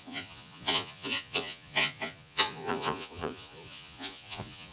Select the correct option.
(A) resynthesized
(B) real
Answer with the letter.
A